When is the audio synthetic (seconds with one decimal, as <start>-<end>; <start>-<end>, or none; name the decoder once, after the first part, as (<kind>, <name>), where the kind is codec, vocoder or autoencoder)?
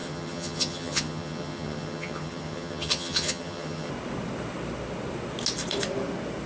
0.0-3.9 (vocoder, HiFi-GAN)